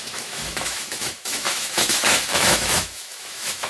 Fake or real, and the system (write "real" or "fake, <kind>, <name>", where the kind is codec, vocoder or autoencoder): fake, autoencoder, DAC-VAE